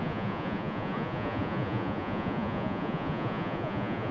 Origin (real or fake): fake